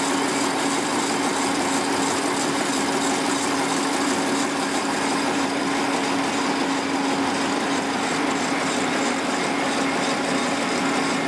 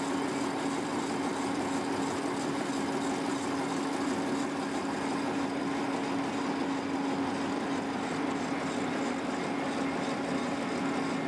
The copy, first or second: first